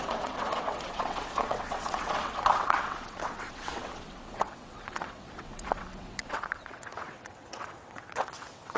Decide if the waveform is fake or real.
fake